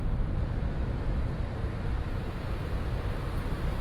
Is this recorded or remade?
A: recorded